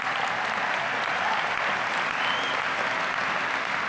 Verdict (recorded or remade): recorded